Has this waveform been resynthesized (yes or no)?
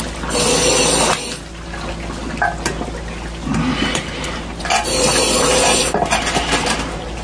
no